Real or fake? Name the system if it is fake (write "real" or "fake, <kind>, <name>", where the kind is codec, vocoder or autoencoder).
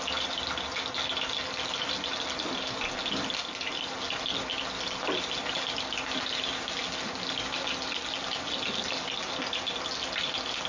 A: real